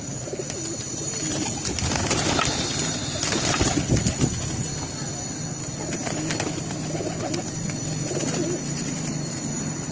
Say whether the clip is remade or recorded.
recorded